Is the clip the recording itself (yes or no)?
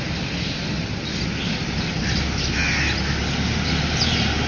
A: yes